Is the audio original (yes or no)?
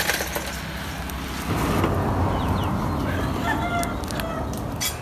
yes